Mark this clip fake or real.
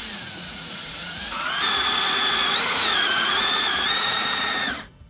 fake